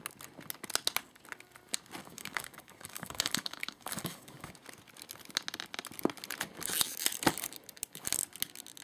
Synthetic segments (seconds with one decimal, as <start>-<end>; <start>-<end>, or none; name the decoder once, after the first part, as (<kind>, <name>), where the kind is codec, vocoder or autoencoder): 2.0-4.5 (codec, DAC)